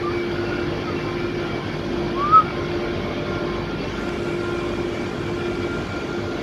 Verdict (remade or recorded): recorded